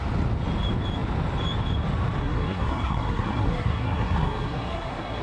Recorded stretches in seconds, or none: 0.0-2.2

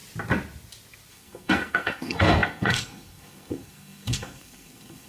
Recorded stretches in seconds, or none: 0.0-1.1